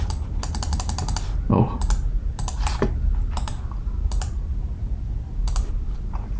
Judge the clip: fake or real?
real